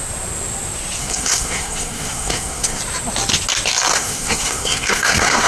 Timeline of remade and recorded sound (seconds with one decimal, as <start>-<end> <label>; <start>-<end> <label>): 0.0-1.0 recorded; 1.0-2.8 remade; 2.8-3.9 recorded; 3.9-5.5 remade